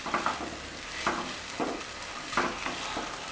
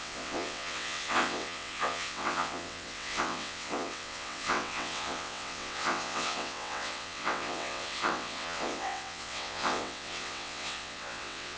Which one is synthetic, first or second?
second